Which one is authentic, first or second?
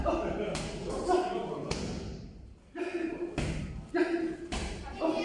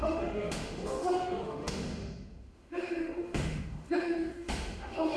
first